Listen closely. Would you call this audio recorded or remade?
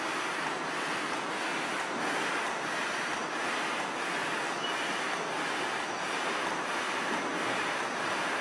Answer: recorded